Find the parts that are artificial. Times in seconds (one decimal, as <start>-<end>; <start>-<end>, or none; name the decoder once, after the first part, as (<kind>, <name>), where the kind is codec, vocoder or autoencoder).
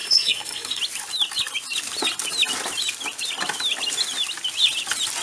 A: 0.0-0.8 (codec, SNAC)